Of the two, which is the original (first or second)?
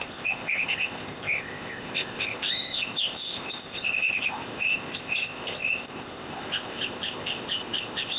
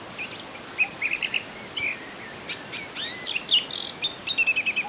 second